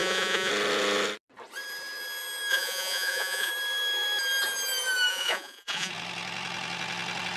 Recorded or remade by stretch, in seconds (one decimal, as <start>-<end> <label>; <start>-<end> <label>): 0.0-0.5 remade; 0.5-2.5 recorded; 2.5-3.5 remade; 3.5-5.1 recorded; 5.1-5.9 remade; 5.9-7.4 recorded